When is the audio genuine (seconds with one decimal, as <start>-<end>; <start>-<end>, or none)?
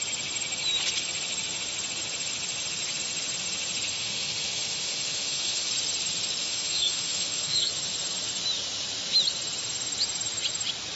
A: 0.0-3.9; 5.7-6.4; 7.7-11.0